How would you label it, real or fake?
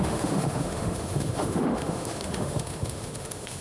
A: fake